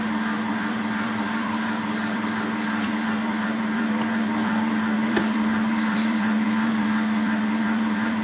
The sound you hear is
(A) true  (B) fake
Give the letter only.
B